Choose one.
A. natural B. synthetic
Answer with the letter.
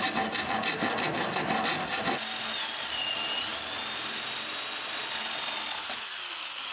A